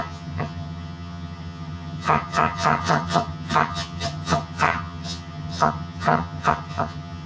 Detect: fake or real fake